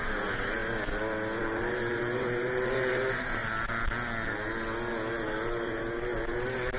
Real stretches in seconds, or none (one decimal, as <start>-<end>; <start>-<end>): 0.6-1.4; 3.4-5.1